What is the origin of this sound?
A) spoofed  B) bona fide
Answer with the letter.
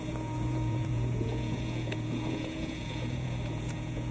A